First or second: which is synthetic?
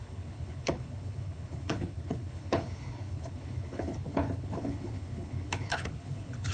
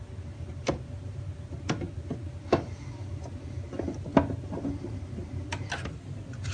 first